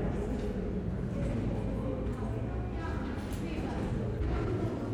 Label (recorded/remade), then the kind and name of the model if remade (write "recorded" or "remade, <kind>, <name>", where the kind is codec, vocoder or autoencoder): recorded